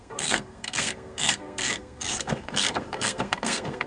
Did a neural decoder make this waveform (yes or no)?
yes